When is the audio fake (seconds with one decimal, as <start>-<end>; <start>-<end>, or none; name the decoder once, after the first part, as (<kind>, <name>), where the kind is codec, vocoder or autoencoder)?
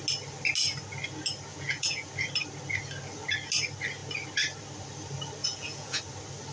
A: 1.5-2.1 (vocoder, Vocos); 5.4-6.0